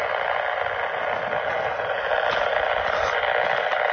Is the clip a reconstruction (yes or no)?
no